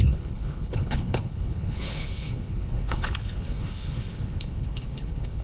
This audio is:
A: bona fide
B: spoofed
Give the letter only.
B